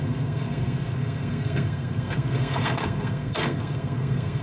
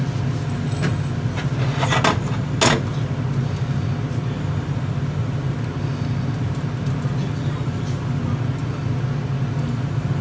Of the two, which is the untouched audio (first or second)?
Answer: second